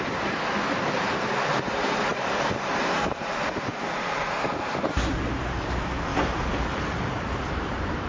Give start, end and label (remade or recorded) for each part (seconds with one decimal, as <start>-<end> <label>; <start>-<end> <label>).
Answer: 0.0-6.1 remade; 6.1-7.5 recorded; 7.5-8.1 remade